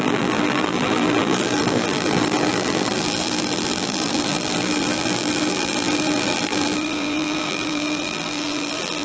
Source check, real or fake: fake